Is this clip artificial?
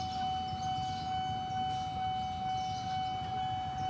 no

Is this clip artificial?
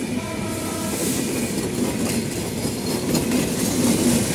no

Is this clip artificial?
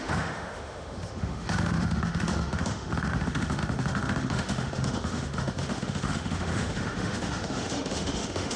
yes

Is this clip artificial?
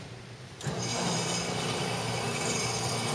yes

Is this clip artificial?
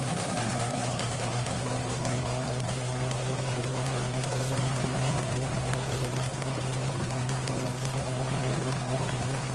yes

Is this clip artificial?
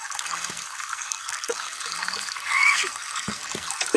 yes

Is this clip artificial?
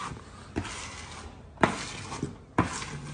no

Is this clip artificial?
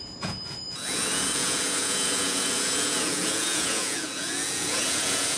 yes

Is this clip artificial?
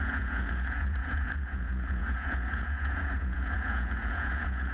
yes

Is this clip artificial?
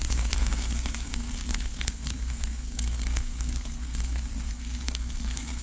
yes